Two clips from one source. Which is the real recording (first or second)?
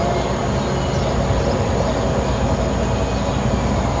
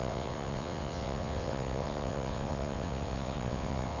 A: first